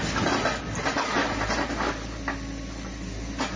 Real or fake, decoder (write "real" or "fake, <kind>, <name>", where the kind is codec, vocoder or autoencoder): real